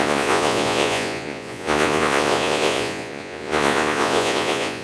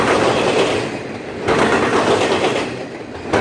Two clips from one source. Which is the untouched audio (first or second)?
second